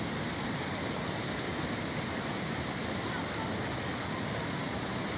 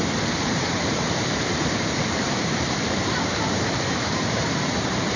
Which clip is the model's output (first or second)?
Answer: second